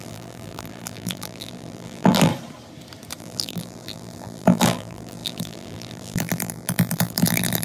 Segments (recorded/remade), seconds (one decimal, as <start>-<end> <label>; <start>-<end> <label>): 0.0-2.3 remade; 2.3-3.2 recorded; 3.2-7.6 remade